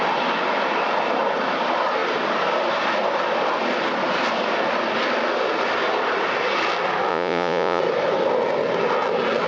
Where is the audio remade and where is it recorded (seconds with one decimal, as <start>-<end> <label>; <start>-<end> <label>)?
0.0-7.1 recorded; 7.1-7.8 remade; 7.8-9.5 recorded